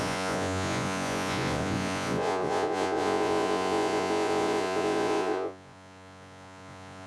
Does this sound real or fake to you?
fake